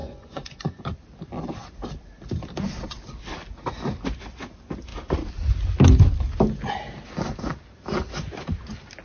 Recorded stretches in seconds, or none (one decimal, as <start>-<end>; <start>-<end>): 0.8-9.0